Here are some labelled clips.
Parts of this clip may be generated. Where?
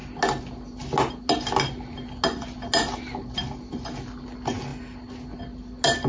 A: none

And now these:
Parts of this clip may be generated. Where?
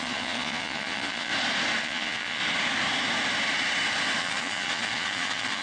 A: 0.0-1.3 (vocoder, Vocos); 1.8-2.4; 4.2-5.6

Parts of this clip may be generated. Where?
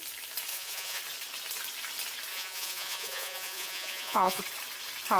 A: 0.5-1.0 (vocoder, Vocos); 2.3-4.4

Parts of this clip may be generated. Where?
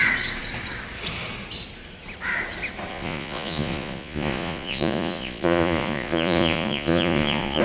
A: 2.9-7.6 (vocoder, Vocos)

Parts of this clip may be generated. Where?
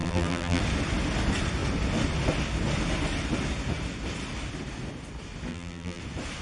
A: 0.0-0.6 (vocoder, BigVGAN v2); 5.5-6.0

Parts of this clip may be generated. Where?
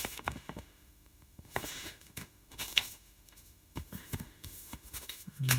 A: 0.0-5.6 (autoencoder, DAC-VAE)